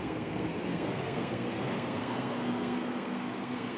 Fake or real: fake